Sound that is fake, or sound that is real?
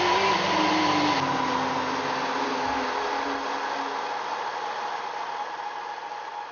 real